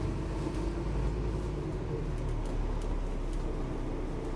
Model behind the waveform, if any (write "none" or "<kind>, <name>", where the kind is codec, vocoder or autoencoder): none